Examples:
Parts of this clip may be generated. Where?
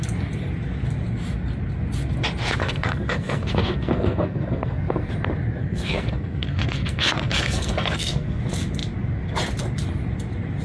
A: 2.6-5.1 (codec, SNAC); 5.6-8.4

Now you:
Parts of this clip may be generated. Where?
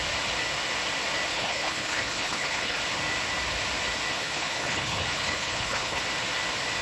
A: 1.3-2.8 (codec, HILCodec); 4.2-6.0